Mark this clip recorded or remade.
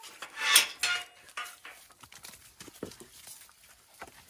recorded